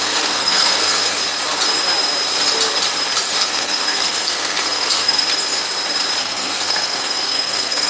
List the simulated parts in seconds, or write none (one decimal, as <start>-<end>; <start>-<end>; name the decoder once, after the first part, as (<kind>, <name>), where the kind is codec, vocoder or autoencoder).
0.0-1.2 (codec, SNAC); 3.4-5.2; 6.2-7.9